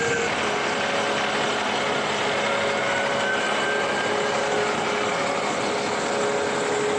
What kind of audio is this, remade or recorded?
recorded